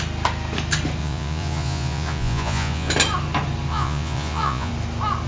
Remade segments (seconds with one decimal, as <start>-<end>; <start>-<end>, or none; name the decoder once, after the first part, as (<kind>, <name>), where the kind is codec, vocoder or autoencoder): 1.0-2.9 (vocoder, Vocos); 3.7-4.7